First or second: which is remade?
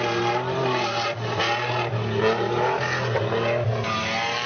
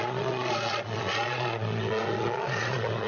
second